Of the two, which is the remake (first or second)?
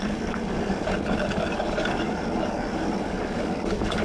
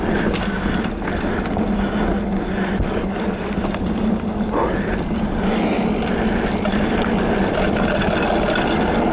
first